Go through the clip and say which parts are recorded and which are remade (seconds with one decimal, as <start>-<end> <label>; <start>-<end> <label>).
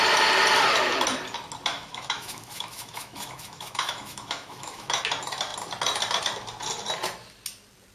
0.0-1.7 recorded; 1.7-5.0 remade; 5.0-7.9 recorded